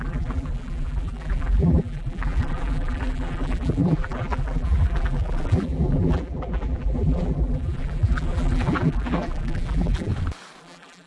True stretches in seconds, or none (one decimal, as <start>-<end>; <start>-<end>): 10.1-10.6